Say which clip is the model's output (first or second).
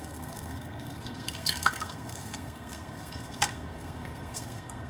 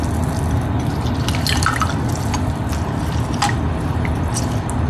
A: first